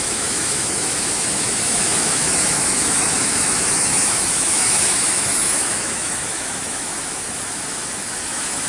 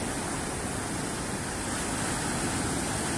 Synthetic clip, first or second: first